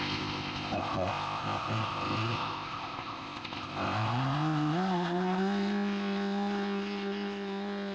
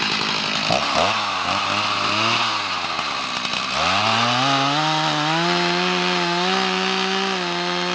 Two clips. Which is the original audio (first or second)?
second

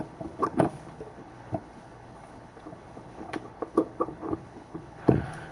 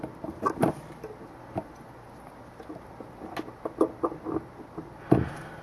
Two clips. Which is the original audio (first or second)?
second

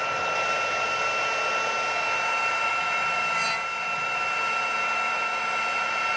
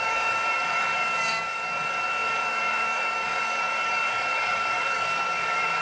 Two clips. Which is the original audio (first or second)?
first